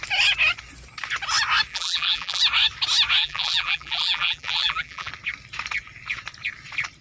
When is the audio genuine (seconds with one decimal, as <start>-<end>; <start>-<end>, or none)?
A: 0.0-1.7; 2.4-3.2; 5.1-7.0